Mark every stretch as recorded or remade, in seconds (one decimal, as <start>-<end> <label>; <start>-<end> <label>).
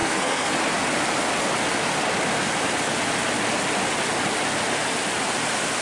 0.0-0.5 remade; 0.5-5.8 recorded